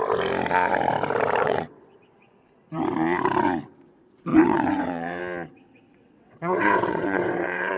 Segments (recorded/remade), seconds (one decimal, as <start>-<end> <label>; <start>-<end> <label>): 0.0-1.4 recorded; 1.4-2.0 remade; 2.0-4.3 recorded; 4.3-5.2 remade; 5.2-6.0 recorded; 6.0-7.8 remade